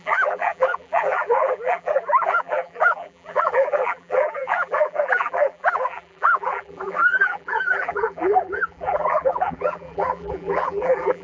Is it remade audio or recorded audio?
remade